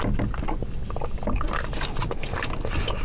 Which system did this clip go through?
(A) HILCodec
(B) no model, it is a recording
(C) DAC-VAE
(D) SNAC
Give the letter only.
B